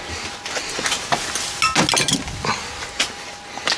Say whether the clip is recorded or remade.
recorded